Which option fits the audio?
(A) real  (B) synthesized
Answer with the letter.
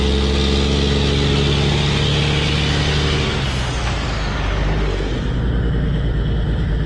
A